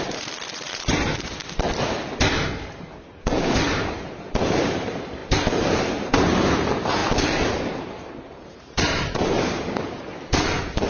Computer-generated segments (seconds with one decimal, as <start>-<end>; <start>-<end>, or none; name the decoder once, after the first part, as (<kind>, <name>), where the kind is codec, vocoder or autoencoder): 0.0-1.4 (vocoder, BigVGAN v2); 2.3-10.9